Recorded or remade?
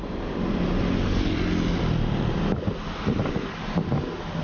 recorded